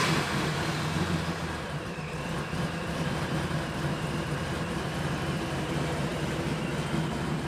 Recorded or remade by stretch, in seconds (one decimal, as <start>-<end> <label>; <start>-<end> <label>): 0.0-3.3 remade; 3.3-7.5 recorded